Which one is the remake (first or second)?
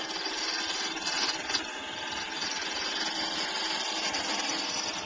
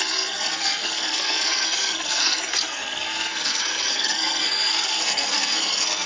second